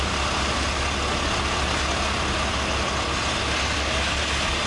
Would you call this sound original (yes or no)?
yes